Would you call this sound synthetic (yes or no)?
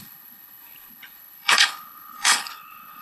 yes